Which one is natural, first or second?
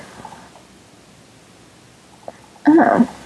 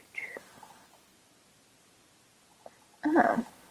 first